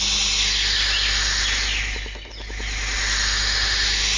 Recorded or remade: recorded